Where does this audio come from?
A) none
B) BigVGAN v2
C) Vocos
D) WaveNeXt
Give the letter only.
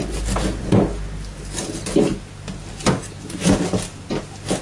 A